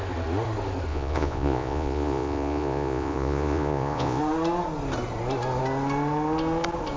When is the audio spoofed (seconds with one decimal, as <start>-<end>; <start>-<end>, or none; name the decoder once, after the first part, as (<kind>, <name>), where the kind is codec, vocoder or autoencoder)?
0.9-4.2 (vocoder, Vocos)